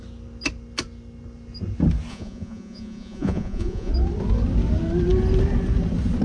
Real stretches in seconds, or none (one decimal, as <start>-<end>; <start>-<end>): 0.0-2.1; 3.9-6.2